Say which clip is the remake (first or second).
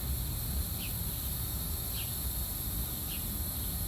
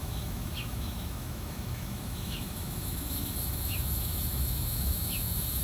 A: second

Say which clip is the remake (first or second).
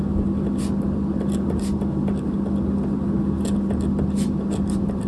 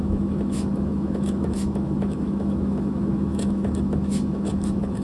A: second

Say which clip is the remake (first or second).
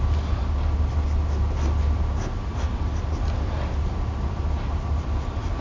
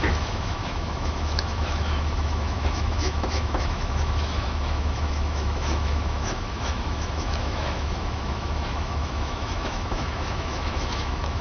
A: second